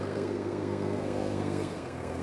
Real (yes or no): no